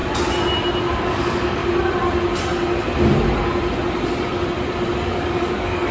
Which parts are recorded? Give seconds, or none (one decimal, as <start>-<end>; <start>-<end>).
0.0-1.0; 1.6-5.1